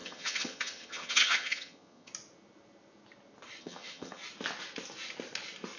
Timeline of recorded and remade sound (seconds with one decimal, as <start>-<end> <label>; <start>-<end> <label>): 0.0-2.1 remade; 2.1-3.6 recorded; 3.6-4.2 remade; 4.2-5.8 recorded